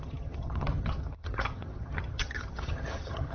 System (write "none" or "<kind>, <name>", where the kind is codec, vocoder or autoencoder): vocoder, HiFi-GAN